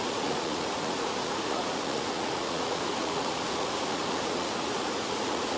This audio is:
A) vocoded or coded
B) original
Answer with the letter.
A